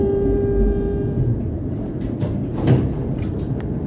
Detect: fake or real fake